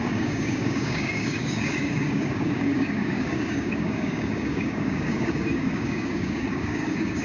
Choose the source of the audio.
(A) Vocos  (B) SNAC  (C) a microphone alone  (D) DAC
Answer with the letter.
D